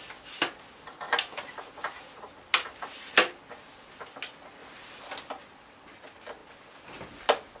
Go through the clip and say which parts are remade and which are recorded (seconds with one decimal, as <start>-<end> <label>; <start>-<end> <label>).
0.0-7.6 recorded